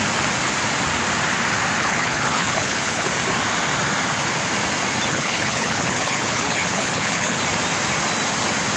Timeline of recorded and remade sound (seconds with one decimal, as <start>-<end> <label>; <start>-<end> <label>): 0.0-1.8 recorded; 1.8-3.1 remade; 3.1-5.1 recorded; 5.1-7.4 remade; 7.4-8.8 recorded